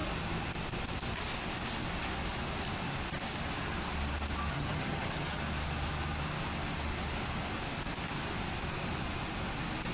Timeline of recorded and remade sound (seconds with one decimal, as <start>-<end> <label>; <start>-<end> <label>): 0.0-4.5 recorded; 4.5-5.4 remade; 5.4-9.9 recorded